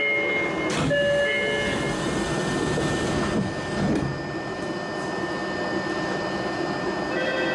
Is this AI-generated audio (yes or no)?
no